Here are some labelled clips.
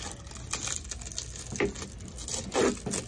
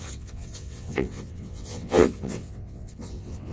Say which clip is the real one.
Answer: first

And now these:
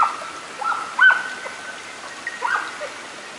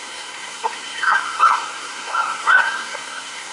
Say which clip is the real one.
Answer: first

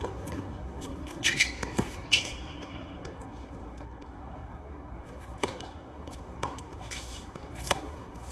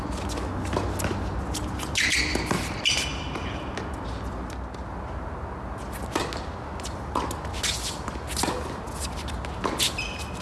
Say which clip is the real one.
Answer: second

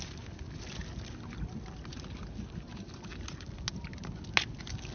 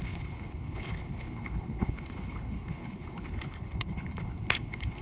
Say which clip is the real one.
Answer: first